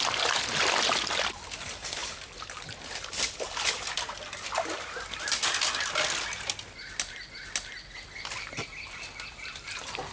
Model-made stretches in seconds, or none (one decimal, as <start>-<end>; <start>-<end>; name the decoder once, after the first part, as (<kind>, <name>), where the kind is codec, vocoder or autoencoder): none